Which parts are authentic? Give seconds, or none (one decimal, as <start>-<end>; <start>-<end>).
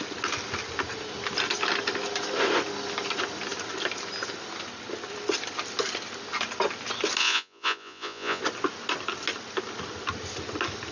0.0-7.2; 8.4-10.9